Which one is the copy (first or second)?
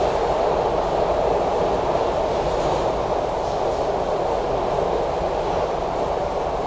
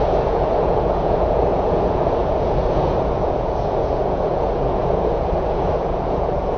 second